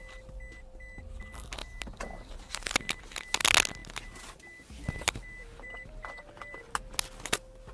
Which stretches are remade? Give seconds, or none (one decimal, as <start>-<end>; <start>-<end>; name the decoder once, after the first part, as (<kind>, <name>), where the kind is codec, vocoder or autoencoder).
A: none